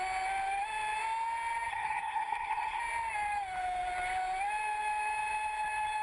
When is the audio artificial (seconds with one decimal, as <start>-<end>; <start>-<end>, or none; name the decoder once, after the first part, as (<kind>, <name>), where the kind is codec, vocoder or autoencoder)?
1.7-2.8 (codec, SNAC)